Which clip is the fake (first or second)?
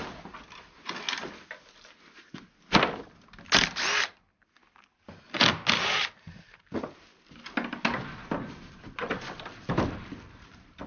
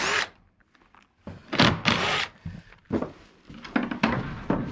second